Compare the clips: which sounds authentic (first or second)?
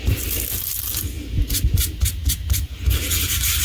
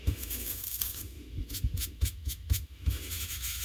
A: first